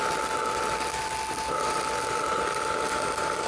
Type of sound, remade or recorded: recorded